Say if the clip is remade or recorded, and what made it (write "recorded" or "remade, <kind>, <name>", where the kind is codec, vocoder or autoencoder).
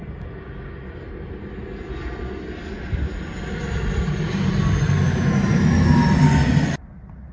recorded